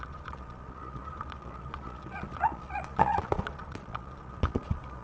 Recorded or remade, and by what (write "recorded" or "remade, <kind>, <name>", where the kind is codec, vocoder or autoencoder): remade, vocoder, Vocos